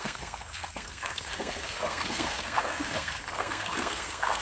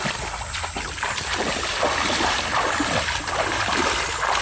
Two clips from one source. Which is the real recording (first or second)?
second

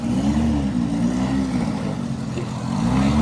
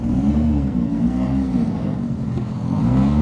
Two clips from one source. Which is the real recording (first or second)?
first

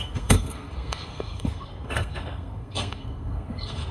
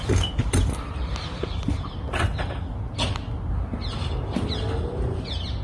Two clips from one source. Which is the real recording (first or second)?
second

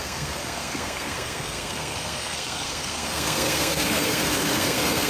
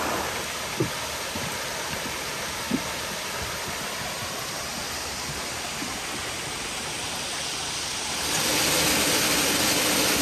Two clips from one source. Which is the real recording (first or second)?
second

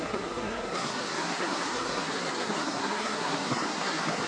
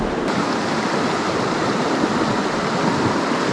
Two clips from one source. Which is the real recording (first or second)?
second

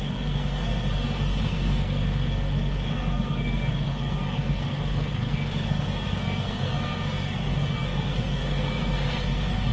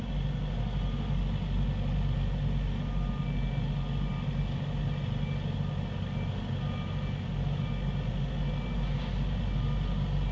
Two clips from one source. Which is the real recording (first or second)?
second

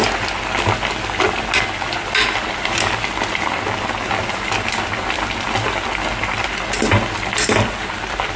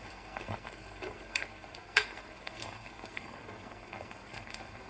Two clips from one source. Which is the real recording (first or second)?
first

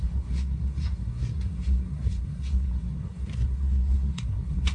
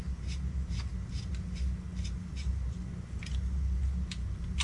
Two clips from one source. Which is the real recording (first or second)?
second